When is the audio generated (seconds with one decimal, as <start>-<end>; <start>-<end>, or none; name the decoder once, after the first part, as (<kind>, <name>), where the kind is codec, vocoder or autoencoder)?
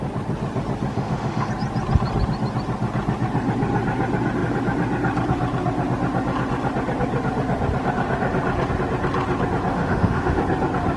0.9-1.5 (autoencoder, DAC-VAE); 9.7-10.4